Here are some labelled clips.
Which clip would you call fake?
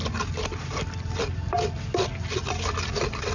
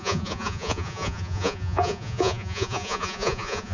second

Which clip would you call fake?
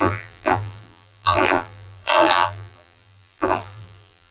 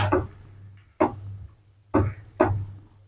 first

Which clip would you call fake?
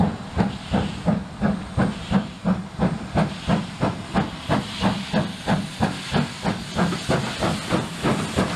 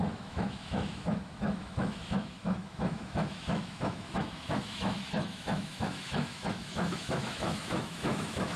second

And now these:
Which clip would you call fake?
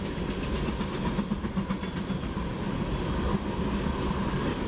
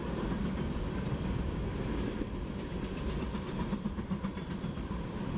second